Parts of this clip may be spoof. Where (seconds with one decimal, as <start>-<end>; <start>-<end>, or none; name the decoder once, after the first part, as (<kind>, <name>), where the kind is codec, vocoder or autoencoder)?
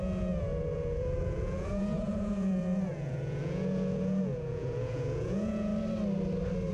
0.0-5.7 (vocoder, Vocos)